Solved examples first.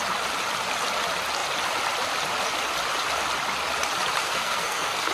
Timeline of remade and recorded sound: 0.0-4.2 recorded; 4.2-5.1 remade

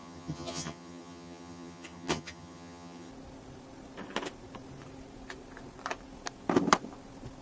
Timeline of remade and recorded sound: 0.0-3.1 remade; 3.1-7.4 recorded

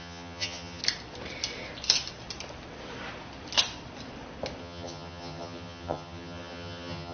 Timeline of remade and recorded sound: 0.0-0.8 remade; 0.8-4.6 recorded; 4.6-7.1 remade

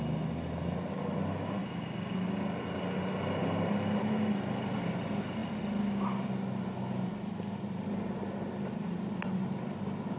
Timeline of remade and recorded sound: 0.0-10.2 recorded

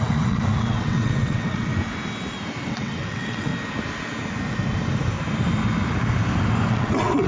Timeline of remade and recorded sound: 0.0-1.7 remade; 1.7-2.7 recorded; 2.7-3.5 remade; 3.5-6.7 recorded; 6.7-7.3 remade

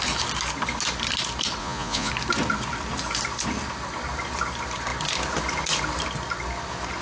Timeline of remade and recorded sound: 0.0-1.6 recorded; 1.6-2.1 remade; 2.1-7.0 recorded

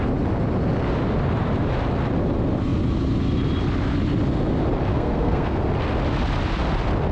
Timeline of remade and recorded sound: 0.0-4.9 recorded; 4.9-5.7 remade; 5.7-7.1 recorded